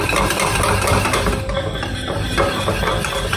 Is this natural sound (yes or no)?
yes